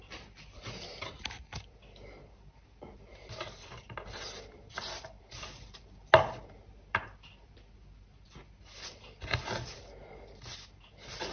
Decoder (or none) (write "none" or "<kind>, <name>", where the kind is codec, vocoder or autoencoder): none